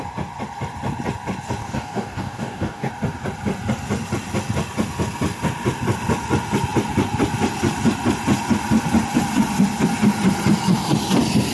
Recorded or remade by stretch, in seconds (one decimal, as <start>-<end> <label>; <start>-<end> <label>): 0.0-1.6 recorded; 1.6-2.9 remade; 2.9-11.5 recorded